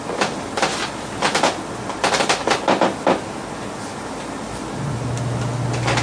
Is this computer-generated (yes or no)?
no